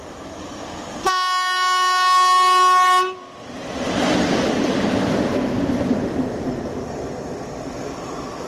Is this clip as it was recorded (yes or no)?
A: yes